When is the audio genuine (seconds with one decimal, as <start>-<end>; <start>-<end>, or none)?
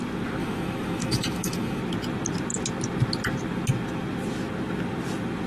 0.0-0.4; 1.8-5.5